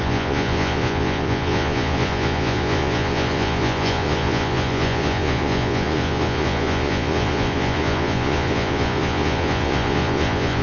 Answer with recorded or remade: remade